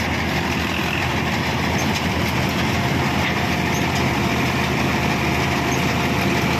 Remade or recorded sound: recorded